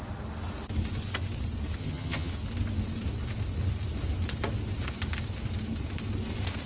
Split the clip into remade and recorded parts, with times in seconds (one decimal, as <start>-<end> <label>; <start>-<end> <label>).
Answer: 0.0-1.8 recorded; 1.8-2.3 remade; 2.3-6.7 recorded